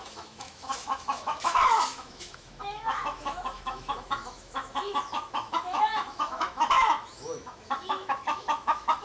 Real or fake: fake